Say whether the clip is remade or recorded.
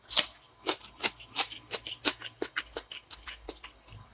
recorded